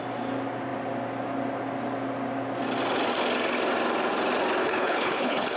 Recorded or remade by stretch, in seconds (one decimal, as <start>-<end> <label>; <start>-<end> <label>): 0.0-4.6 recorded; 4.6-5.6 remade